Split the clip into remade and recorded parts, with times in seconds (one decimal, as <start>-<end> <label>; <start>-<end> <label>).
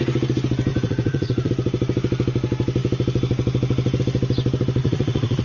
0.0-0.7 recorded; 0.7-1.5 remade; 1.5-4.8 recorded; 4.8-5.4 remade